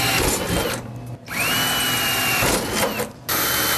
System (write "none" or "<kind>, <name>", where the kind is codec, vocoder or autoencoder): none